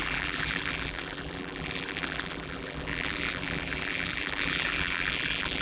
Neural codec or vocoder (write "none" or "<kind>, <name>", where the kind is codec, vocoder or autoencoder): vocoder, BigVGAN v2